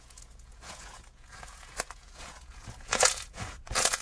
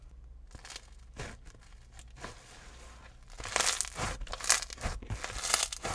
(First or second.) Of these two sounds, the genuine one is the second